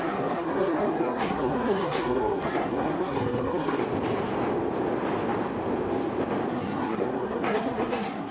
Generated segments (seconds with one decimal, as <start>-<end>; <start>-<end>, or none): 0.0-3.8; 6.5-8.3